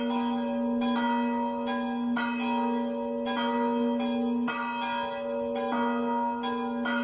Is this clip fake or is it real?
real